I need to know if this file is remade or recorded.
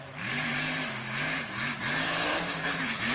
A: remade